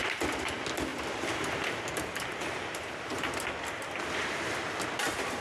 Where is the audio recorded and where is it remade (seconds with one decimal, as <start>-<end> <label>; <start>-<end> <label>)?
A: 0.0-0.9 recorded; 0.9-3.3 remade; 3.3-5.4 recorded